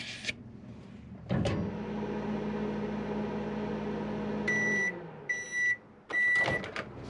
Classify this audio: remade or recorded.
recorded